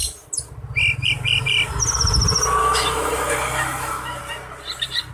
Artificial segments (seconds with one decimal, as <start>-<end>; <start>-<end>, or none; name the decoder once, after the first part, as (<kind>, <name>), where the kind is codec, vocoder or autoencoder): 2.6-4.2 (autoencoder, DAC-VAE)